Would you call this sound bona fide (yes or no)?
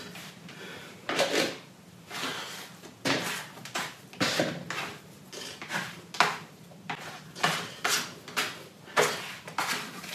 yes